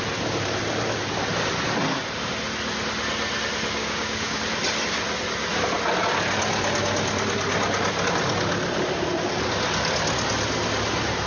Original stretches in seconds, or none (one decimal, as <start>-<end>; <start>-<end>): 0.0-3.8; 4.4-11.3